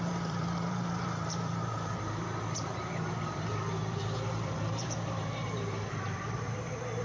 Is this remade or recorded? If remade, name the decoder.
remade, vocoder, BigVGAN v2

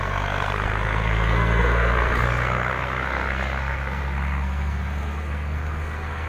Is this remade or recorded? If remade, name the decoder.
remade, codec, SNAC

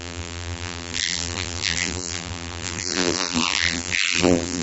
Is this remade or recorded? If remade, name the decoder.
remade, vocoder, BigVGAN v2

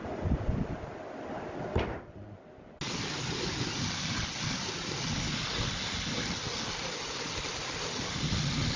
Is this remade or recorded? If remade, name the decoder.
recorded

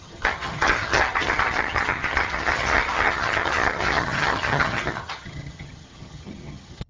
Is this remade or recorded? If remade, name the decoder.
remade, vocoder, HiFi-GAN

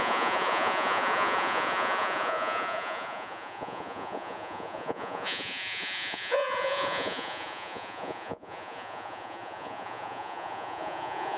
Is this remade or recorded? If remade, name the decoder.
remade, vocoder, Vocos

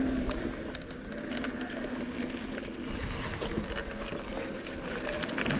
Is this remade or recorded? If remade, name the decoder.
recorded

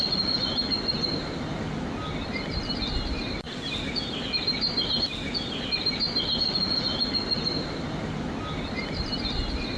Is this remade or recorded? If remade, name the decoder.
recorded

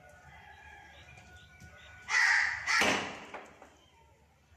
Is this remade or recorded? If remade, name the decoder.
recorded